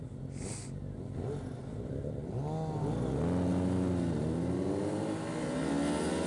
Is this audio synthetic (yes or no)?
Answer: no